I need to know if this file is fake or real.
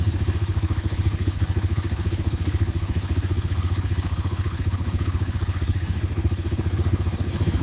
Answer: fake